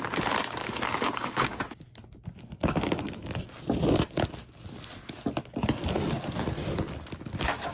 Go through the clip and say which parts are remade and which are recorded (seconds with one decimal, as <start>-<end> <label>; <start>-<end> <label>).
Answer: 0.0-0.6 recorded; 0.6-1.6 remade; 1.6-7.7 recorded